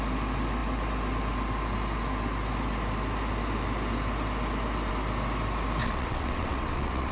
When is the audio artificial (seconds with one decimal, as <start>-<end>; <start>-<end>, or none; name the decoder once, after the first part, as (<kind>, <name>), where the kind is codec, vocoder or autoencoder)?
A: 5.8-7.1 (vocoder, WaveNeXt)